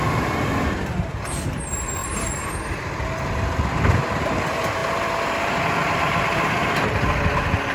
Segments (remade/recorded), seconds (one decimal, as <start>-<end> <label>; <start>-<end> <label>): 0.0-7.7 recorded